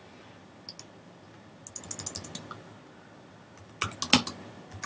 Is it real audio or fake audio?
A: real